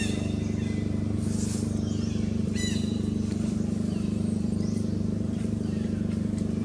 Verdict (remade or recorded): remade